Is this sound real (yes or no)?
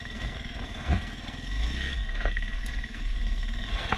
no